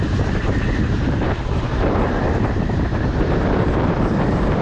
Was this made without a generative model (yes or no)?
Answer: no